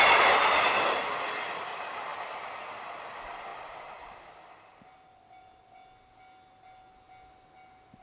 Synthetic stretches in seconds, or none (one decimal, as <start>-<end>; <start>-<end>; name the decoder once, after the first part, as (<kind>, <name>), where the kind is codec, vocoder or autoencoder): none